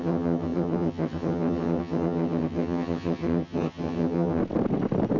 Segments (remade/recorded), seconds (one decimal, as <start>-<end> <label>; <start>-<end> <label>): 0.0-4.4 remade; 4.4-5.2 recorded